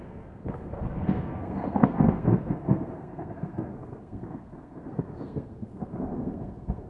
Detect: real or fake fake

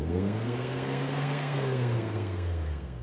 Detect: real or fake fake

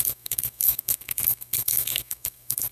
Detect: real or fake fake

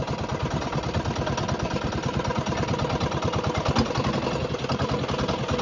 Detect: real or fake real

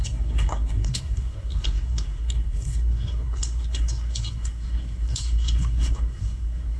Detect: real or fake fake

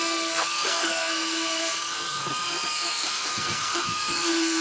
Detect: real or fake fake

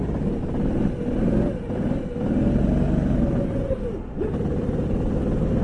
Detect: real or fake real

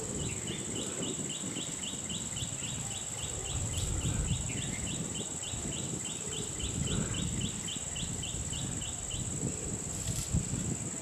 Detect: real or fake real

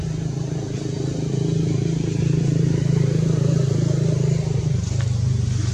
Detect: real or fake real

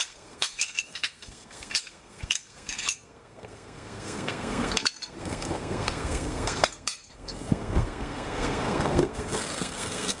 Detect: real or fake fake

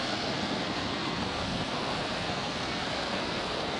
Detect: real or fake fake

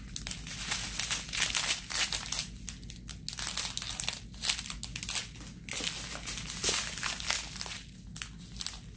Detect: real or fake real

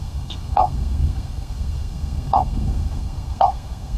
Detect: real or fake fake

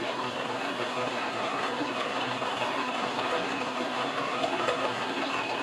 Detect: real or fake fake